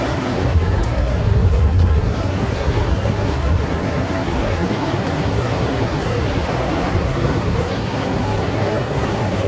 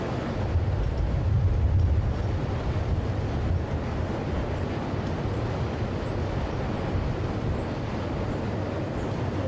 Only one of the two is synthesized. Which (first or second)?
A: first